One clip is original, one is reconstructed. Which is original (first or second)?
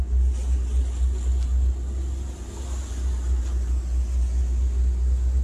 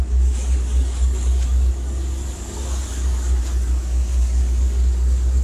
first